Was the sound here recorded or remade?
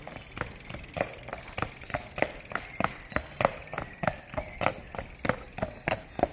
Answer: recorded